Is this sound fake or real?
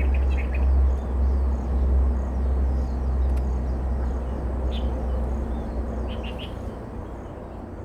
real